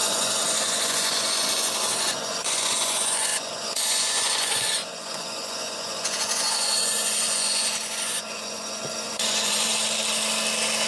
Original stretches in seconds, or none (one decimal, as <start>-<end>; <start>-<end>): 9.7-10.9